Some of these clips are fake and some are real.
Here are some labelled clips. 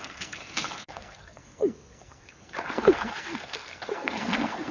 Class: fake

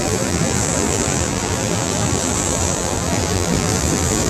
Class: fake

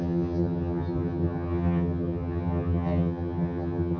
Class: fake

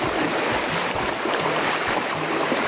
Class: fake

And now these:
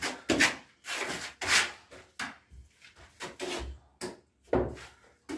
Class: real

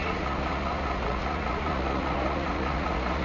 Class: fake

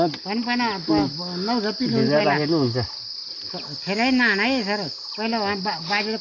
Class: real